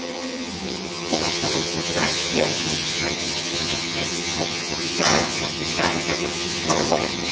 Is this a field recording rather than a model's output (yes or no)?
no